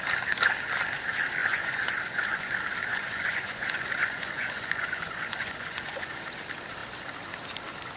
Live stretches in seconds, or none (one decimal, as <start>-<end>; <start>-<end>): 0.0-1.4; 2.5-2.9; 6.2-8.0